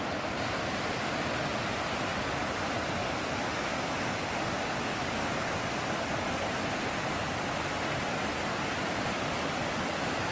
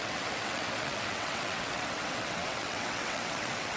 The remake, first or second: second